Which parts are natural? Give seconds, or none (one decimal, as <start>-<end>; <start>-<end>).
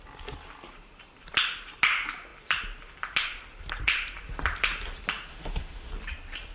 0.0-5.3; 5.9-6.5